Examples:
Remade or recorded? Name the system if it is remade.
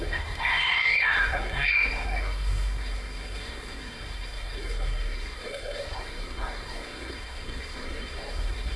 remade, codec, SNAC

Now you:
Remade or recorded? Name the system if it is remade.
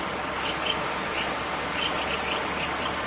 recorded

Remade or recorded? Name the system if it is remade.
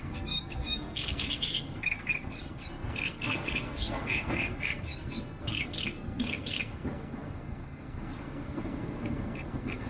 remade, codec, SNAC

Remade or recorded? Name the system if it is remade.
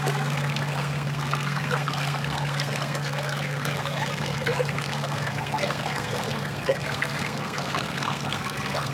remade, codec, SNAC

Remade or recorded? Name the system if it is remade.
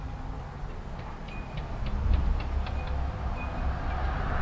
recorded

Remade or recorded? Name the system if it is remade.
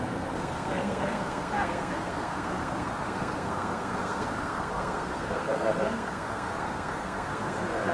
remade, codec, SNAC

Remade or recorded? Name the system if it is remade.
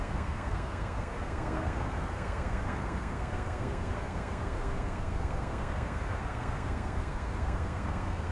remade, codec, SNAC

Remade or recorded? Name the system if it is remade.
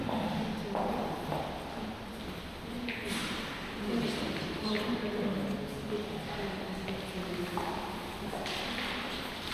recorded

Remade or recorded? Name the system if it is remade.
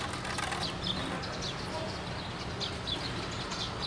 recorded